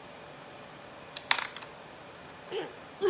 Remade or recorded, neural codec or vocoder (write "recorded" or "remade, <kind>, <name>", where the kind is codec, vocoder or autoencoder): recorded